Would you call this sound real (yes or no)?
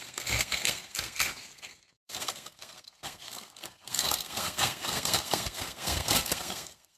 no